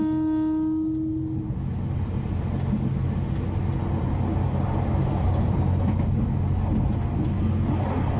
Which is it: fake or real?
real